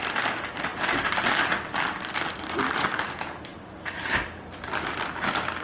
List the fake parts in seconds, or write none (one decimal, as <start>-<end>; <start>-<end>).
3.5-4.9